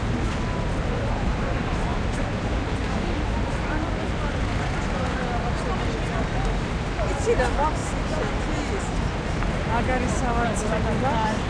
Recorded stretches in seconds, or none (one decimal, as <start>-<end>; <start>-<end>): 0.0-11.5